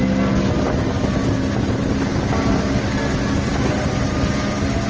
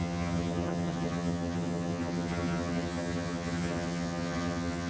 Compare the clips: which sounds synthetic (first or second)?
second